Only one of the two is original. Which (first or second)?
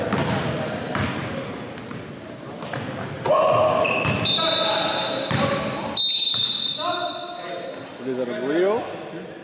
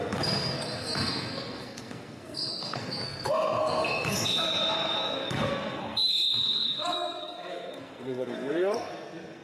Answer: first